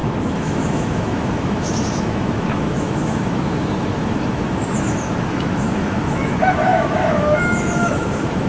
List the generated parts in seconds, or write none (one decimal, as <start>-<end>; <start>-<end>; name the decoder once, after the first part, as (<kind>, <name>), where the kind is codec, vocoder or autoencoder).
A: 0.0-8.5 (autoencoder, DAC-VAE)